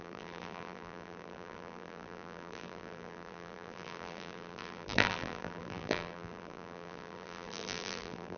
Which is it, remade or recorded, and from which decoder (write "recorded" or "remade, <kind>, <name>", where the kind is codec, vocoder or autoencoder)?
remade, vocoder, BigVGAN v2